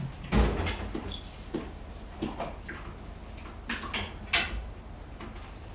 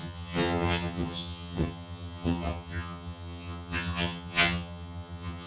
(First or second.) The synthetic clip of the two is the second